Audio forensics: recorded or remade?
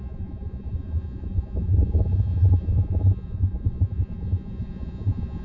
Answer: remade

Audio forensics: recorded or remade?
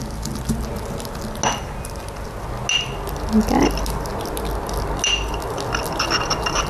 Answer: recorded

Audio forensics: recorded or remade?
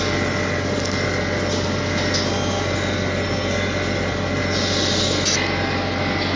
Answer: recorded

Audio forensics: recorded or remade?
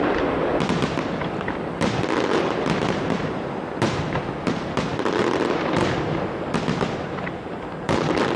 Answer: recorded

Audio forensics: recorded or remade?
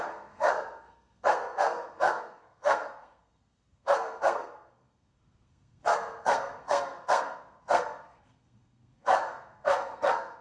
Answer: remade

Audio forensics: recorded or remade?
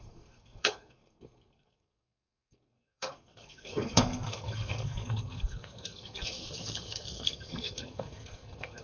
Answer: remade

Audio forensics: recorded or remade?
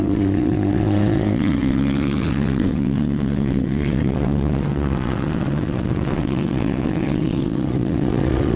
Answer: remade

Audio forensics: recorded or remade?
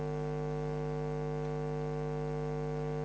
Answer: recorded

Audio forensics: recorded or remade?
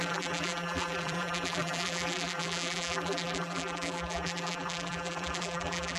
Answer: remade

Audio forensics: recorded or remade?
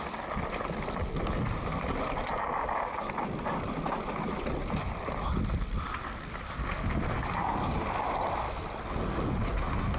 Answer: recorded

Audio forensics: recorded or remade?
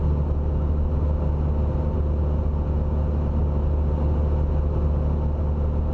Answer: recorded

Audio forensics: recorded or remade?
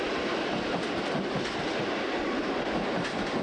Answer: recorded